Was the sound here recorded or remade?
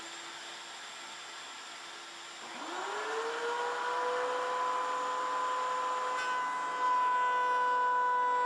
recorded